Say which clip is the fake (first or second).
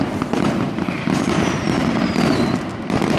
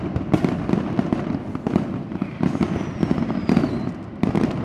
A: first